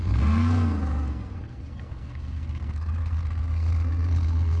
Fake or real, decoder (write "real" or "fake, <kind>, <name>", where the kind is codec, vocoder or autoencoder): fake, codec, SNAC